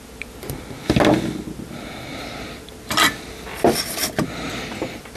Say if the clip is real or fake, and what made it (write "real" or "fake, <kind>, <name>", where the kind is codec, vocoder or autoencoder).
real